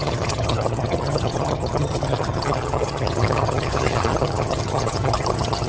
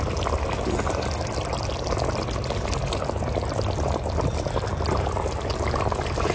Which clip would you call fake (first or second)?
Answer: first